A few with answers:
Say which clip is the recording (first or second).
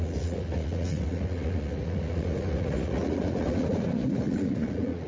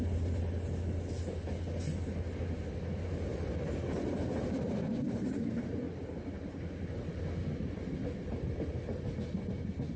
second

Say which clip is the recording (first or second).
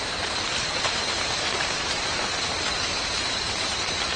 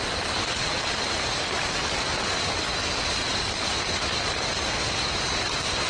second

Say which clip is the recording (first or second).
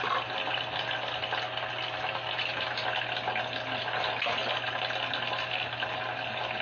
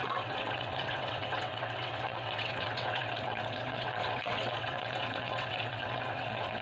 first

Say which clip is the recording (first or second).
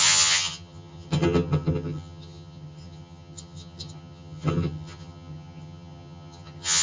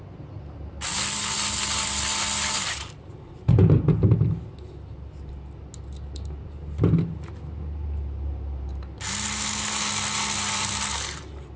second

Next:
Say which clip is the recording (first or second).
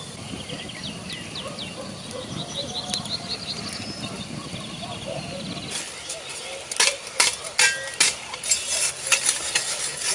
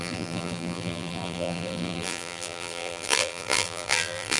first